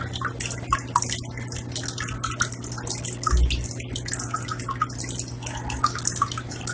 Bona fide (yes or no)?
yes